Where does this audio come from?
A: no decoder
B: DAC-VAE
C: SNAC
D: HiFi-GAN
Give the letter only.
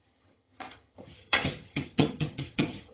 D